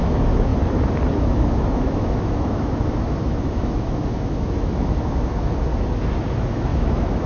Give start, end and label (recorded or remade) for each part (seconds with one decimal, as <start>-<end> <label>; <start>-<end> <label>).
0.0-0.5 remade; 0.5-1.1 recorded; 1.1-5.7 remade; 5.7-6.3 recorded; 6.3-7.3 remade